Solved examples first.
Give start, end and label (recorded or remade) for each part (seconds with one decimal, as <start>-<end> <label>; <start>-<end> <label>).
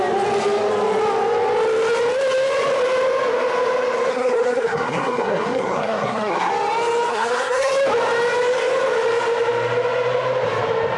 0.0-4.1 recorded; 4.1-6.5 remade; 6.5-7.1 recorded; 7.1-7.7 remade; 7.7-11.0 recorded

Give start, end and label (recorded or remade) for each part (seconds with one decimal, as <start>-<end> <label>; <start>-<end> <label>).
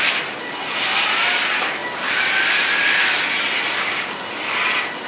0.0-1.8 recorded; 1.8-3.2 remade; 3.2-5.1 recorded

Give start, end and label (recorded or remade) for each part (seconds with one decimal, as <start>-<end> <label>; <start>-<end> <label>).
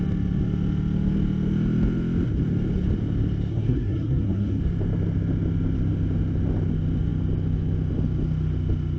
0.0-3.5 recorded; 3.5-4.6 remade; 4.6-9.0 recorded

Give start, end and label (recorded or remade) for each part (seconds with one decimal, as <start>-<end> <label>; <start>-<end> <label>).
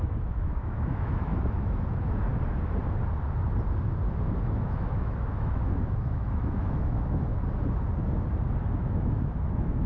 0.0-2.3 remade; 2.3-4.4 recorded; 4.4-7.3 remade; 7.3-9.0 recorded; 9.0-9.9 remade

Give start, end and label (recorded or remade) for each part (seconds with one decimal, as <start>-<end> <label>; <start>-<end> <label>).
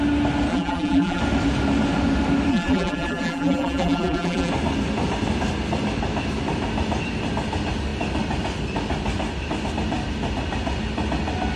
0.0-0.5 recorded; 0.5-1.2 remade; 1.2-2.5 recorded; 2.5-4.5 remade; 4.5-11.6 recorded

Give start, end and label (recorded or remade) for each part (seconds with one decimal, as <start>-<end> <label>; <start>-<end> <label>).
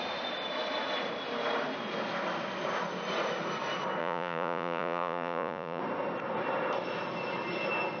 0.0-4.0 recorded; 4.0-5.8 remade; 5.8-8.0 recorded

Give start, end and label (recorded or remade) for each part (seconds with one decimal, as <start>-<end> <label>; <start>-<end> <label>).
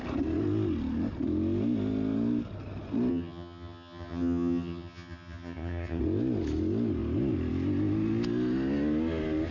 0.0-3.1 recorded; 3.1-6.0 remade; 6.0-9.5 recorded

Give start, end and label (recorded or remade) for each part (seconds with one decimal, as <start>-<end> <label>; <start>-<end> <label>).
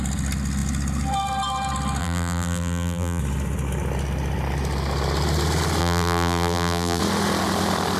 0.0-2.0 recorded; 2.0-3.2 remade; 3.2-5.8 recorded; 5.8-7.0 remade; 7.0-8.0 recorded